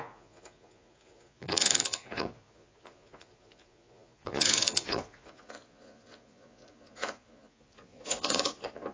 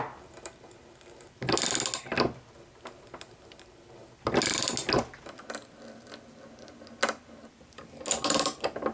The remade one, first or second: first